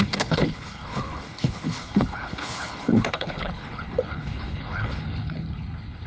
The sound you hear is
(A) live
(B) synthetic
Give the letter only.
B